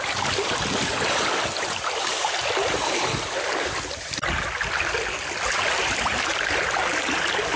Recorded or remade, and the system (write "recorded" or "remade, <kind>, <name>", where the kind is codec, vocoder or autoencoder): recorded